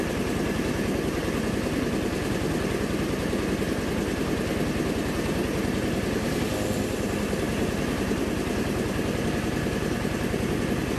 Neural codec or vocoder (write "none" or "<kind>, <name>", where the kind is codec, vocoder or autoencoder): none